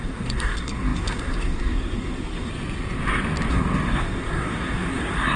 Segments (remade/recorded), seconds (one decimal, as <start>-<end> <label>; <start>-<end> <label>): 0.0-2.5 remade; 2.5-3.5 recorded; 3.5-5.4 remade